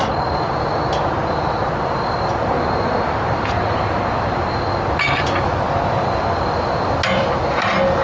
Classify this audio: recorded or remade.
recorded